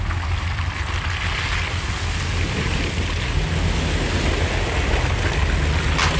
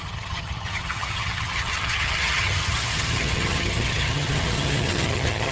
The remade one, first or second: second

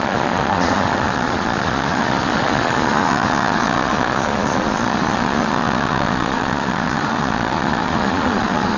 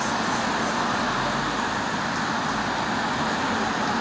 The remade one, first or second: first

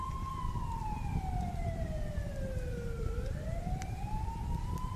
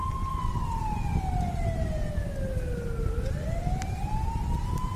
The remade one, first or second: first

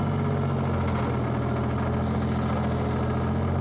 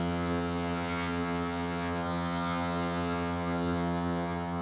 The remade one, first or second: second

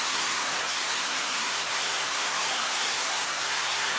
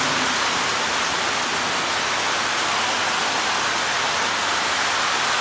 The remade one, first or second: first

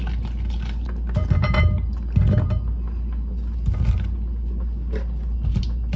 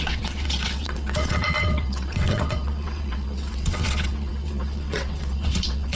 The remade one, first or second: second